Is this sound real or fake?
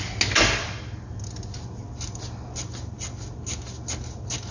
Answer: real